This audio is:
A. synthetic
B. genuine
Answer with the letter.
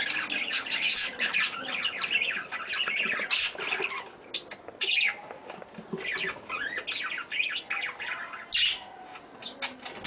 B